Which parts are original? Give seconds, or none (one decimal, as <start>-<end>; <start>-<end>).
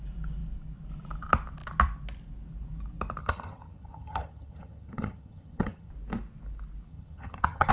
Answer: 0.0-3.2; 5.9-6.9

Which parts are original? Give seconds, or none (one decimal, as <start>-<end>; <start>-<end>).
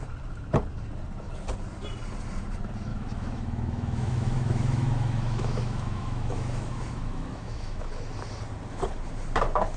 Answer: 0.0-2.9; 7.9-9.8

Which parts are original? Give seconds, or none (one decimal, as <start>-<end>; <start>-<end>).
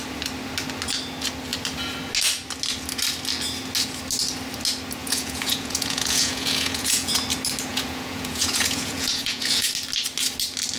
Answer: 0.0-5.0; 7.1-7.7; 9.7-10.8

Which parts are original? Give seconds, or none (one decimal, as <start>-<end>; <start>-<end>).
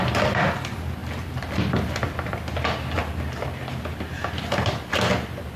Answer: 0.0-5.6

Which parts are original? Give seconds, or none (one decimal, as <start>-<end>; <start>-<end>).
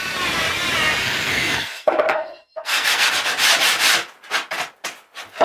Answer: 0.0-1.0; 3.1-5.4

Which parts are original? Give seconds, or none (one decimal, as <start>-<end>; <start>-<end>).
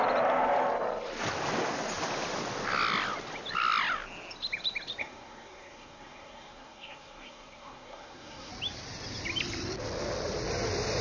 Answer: 0.0-5.0; 8.5-11.0